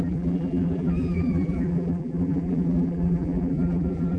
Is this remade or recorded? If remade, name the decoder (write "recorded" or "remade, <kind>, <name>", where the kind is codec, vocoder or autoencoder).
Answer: remade, vocoder, BigVGAN v2